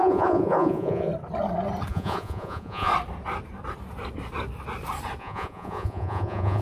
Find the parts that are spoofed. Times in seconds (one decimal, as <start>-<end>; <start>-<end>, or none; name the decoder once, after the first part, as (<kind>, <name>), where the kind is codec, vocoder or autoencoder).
0.0-1.1 (vocoder, Vocos); 1.9-2.9; 5.2-6.6